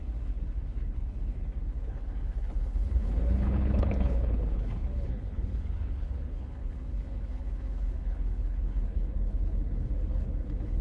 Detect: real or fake fake